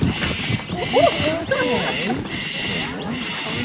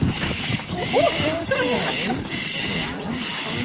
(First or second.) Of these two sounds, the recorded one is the first